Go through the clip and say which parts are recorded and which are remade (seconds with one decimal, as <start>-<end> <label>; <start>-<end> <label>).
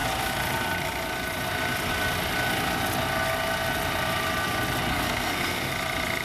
0.0-4.9 recorded; 4.9-5.7 remade; 5.7-6.2 recorded